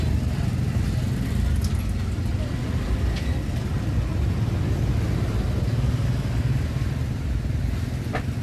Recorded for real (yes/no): yes